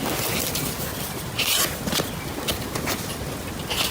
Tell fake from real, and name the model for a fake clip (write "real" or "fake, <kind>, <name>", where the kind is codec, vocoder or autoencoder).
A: real